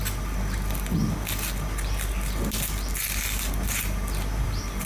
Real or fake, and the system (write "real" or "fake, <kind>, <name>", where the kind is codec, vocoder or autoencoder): real